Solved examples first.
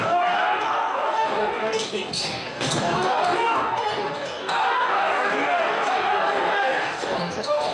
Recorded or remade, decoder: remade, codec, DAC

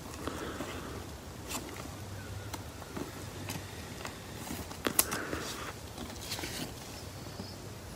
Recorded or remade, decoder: recorded